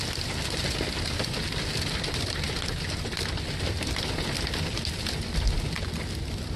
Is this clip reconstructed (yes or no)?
no